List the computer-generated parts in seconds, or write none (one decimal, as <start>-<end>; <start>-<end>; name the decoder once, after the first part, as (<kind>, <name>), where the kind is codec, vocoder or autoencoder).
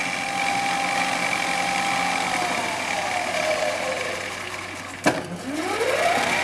none